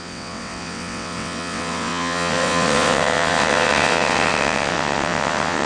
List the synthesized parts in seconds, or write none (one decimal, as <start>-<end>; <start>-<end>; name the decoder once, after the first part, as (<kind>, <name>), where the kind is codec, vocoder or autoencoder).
0.0-5.7 (vocoder, WaveNeXt)